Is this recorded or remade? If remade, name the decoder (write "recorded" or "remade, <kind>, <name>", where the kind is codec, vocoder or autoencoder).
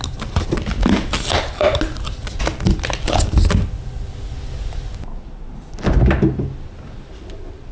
recorded